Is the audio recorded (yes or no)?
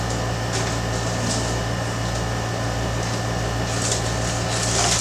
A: yes